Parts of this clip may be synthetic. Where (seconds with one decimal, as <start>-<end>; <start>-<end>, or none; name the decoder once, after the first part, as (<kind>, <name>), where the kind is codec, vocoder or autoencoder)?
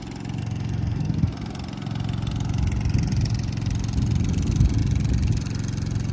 0.4-1.3 (codec, SNAC)